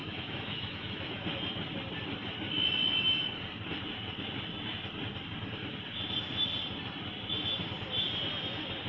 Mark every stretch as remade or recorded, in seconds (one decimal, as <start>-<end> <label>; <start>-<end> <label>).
0.0-1.2 remade; 1.2-8.9 recorded